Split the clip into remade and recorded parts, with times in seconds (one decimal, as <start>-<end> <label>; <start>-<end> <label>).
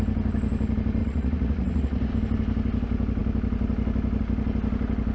0.0-1.0 recorded; 1.0-2.1 remade; 2.1-5.1 recorded